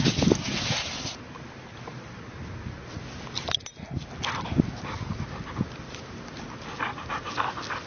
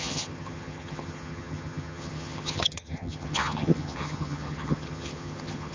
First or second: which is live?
first